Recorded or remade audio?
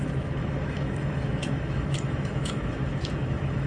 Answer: remade